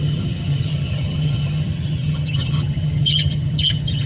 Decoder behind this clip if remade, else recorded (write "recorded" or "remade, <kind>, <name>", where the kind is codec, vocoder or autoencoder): remade, vocoder, HiFi-GAN